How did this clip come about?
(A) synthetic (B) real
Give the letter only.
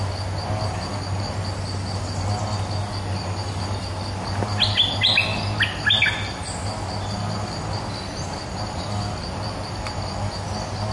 B